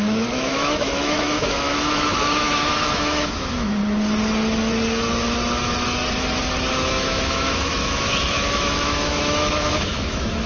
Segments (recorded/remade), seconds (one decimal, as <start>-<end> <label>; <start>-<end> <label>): 0.0-3.8 remade; 3.8-6.7 recorded; 6.7-10.5 remade

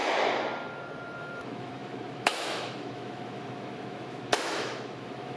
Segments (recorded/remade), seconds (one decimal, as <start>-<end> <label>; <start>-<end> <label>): 0.0-1.2 recorded; 1.2-5.4 remade

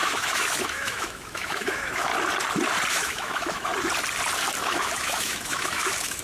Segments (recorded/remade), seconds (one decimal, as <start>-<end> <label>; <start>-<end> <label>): 0.0-2.1 remade; 2.1-2.9 recorded; 2.9-3.7 remade; 3.7-4.6 recorded; 4.6-6.2 remade

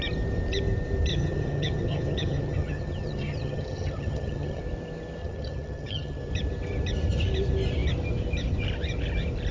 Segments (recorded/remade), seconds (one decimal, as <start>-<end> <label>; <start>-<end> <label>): 0.0-1.1 recorded; 1.1-4.6 remade; 4.6-5.2 recorded; 5.2-6.3 remade; 6.3-9.5 recorded

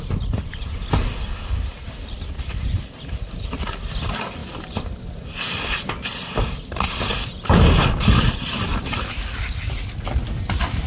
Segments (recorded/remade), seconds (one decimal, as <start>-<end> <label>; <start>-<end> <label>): 0.0-10.9 recorded